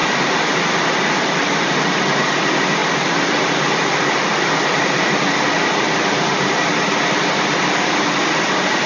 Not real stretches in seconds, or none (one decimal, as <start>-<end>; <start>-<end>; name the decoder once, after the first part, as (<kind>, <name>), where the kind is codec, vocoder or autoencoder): 2.8-6.9 (vocoder, BigVGAN v2)